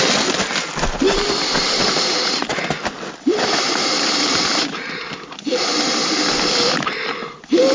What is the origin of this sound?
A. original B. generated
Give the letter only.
A